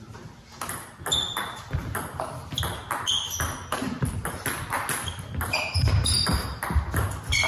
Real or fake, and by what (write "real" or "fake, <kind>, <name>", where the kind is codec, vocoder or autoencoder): real